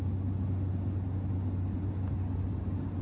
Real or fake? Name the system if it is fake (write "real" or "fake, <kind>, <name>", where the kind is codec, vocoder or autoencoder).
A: real